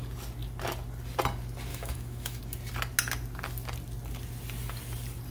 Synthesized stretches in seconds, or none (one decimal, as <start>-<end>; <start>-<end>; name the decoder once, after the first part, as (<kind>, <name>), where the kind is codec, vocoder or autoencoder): 1.7-2.4 (autoencoder, DAC-VAE)